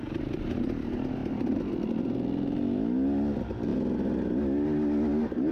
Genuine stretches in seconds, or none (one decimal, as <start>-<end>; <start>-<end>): 0.0-1.2; 2.0-5.5